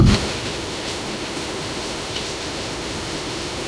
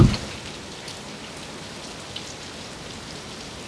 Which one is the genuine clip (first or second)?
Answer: second